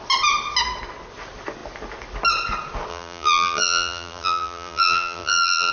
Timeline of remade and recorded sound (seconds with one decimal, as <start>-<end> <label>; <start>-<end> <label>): 0.0-2.9 recorded; 2.9-5.7 remade